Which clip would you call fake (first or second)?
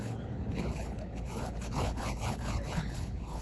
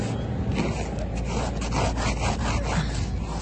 first